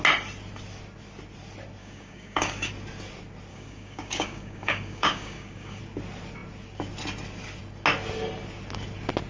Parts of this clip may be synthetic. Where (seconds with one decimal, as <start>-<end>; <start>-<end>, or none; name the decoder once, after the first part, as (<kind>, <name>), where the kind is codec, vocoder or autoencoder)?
1.8-2.7 (codec, DAC); 3.5-5.8